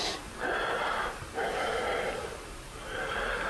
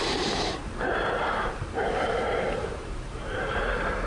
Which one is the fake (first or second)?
second